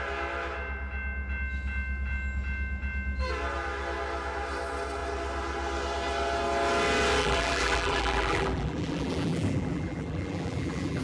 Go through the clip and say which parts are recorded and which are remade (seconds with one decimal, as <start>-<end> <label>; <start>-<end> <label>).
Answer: 0.0-7.2 recorded; 7.2-11.0 remade